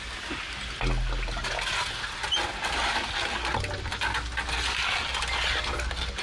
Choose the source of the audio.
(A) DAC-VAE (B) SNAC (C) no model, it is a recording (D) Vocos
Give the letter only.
C